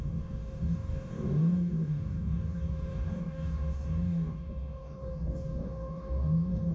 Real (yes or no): no